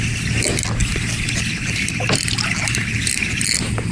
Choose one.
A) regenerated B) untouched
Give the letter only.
B